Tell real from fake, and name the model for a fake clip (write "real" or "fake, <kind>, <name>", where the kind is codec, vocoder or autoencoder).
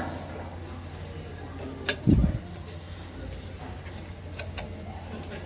real